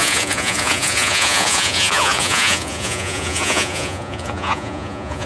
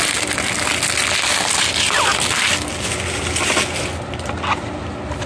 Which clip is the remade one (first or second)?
first